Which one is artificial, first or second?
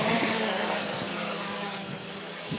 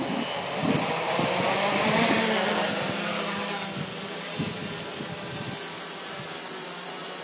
first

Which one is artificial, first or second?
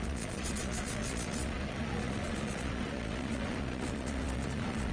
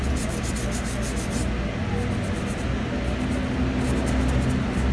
first